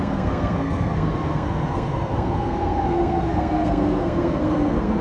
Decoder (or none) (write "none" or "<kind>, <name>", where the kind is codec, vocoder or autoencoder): codec, SNAC